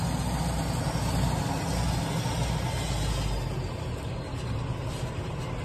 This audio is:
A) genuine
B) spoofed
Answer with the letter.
A